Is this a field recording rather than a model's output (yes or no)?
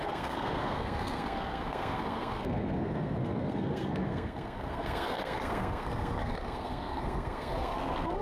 no